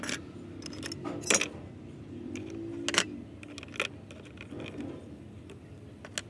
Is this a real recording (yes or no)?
yes